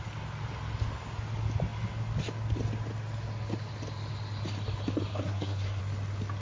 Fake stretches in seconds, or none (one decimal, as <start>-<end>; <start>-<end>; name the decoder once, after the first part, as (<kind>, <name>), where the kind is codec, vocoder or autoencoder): 5.1-5.8 (codec, SNAC)